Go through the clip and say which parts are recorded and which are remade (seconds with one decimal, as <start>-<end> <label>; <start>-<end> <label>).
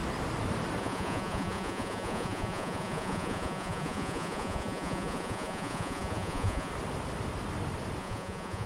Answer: 0.0-0.8 recorded; 0.8-6.7 remade; 6.7-8.0 recorded; 8.0-8.7 remade